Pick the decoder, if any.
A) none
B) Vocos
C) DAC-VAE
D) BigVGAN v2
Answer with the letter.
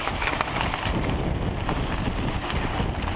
A